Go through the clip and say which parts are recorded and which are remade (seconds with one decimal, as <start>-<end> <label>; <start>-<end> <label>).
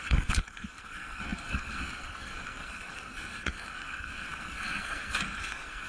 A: 0.0-5.9 remade